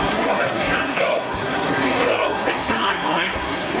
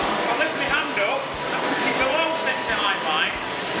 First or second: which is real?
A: second